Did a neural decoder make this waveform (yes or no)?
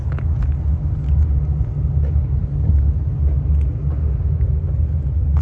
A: no